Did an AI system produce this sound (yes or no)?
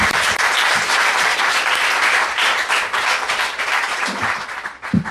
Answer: yes